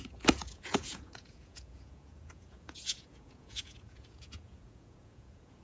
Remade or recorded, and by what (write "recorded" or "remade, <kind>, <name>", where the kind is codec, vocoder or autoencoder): remade, vocoder, Vocos